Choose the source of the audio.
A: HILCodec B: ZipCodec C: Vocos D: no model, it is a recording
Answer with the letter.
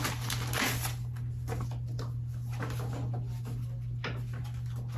D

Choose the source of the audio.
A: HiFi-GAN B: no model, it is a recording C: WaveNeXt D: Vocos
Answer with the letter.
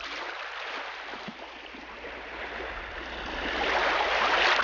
B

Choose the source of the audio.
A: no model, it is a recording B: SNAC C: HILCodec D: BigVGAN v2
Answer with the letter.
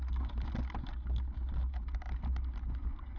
A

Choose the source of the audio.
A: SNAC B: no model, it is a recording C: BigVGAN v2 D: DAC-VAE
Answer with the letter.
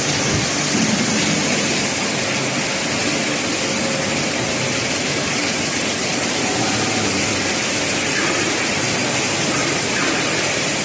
B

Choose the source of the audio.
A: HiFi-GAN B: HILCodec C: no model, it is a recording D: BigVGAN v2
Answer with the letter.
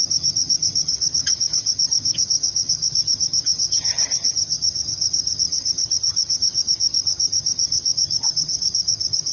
A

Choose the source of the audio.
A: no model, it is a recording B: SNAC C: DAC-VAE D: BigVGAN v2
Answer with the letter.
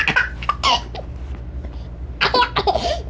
A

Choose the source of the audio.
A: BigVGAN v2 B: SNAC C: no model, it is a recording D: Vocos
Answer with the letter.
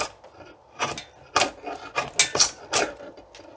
C